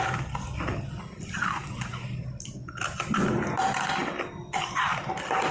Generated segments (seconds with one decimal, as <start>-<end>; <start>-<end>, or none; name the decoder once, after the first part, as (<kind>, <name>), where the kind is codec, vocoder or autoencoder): none